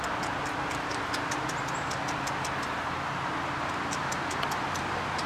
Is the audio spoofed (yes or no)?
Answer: no